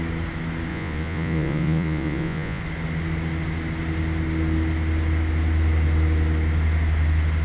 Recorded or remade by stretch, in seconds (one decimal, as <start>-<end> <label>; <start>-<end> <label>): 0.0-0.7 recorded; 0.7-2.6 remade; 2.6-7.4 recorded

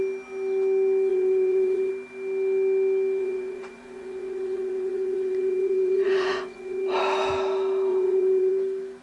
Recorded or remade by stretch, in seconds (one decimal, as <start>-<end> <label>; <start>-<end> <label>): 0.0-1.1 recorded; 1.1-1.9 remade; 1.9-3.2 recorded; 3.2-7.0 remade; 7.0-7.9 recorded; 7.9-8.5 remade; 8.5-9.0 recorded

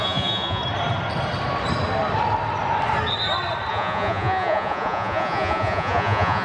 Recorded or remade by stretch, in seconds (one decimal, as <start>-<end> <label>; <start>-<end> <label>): 0.0-0.6 remade; 0.6-3.7 recorded; 3.7-6.4 remade

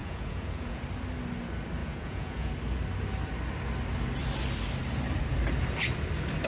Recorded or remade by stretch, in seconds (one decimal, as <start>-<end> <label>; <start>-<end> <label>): 0.0-0.8 remade; 0.8-1.8 recorded; 1.8-2.5 remade; 2.5-6.5 recorded

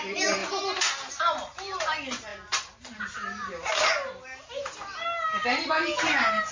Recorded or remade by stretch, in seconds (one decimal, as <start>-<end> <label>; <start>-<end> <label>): 0.0-6.5 recorded

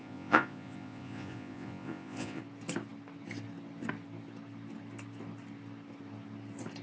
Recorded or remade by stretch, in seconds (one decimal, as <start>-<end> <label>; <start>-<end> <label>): 0.0-2.4 remade; 2.4-6.8 recorded